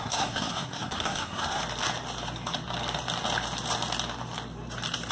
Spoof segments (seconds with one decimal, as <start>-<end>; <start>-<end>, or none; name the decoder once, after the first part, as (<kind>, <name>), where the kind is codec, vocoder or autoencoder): 0.0-1.6 (codec, SNAC)